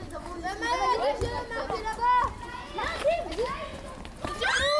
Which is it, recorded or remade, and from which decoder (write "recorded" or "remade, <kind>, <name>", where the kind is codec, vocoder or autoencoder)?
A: recorded